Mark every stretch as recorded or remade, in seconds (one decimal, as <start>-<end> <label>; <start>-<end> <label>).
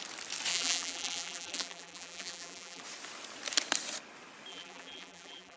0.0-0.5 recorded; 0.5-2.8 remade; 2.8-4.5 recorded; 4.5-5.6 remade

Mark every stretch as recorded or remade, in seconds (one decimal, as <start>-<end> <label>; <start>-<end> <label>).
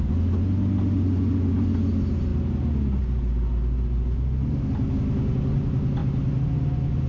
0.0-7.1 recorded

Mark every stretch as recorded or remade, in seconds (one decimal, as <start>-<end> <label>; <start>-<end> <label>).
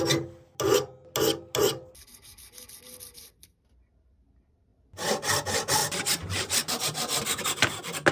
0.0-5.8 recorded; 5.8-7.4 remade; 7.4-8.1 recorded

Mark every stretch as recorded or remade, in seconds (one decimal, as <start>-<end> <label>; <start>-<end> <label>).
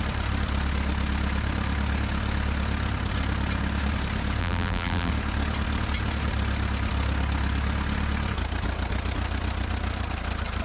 0.0-4.4 recorded; 4.4-5.1 remade; 5.1-10.6 recorded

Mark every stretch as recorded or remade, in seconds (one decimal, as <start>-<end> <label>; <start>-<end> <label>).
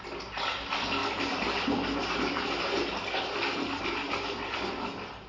0.0-1.0 recorded; 1.0-3.8 remade; 3.8-5.3 recorded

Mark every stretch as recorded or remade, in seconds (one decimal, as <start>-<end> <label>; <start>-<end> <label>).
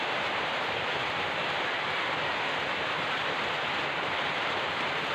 0.0-1.0 remade; 1.0-4.1 recorded; 4.1-5.1 remade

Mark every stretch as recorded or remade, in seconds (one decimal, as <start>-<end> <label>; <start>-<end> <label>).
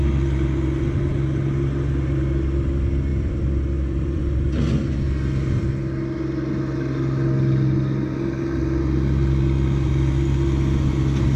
0.0-3.1 recorded; 3.1-4.2 remade; 4.2-11.4 recorded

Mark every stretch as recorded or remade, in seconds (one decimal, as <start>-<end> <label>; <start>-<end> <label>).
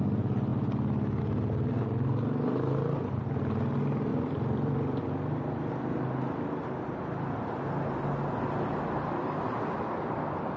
0.0-4.1 recorded; 4.1-5.0 remade; 5.0-10.6 recorded